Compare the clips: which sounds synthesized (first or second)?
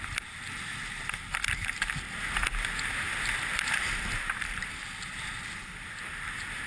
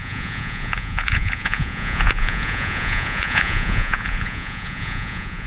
second